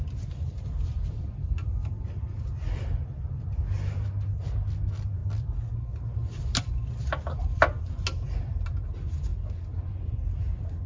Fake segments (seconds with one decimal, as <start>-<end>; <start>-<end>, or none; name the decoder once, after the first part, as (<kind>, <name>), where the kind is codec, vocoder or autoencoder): none